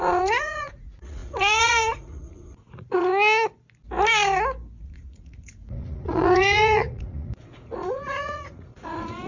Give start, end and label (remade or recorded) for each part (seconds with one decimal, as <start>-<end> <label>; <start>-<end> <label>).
0.0-3.1 remade; 3.1-4.8 recorded; 4.8-9.3 remade